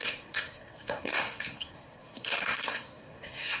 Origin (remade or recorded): remade